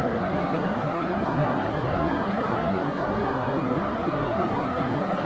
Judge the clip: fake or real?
fake